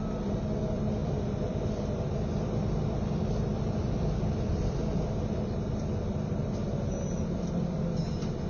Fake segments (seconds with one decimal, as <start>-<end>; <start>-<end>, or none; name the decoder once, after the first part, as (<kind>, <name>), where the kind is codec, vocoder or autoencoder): 0.0-4.8 (vocoder, BigVGAN v2); 7.5-8.5